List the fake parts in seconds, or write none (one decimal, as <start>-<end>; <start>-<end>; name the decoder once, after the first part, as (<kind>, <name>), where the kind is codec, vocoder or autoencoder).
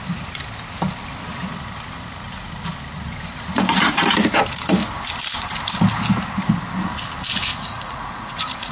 7.5-8.7 (vocoder, Vocos)